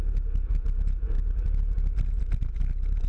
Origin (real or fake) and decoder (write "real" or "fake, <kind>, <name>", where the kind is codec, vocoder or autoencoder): real